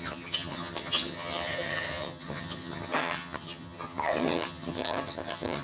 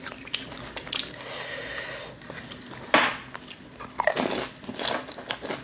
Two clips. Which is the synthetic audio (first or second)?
first